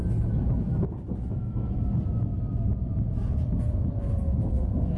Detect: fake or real real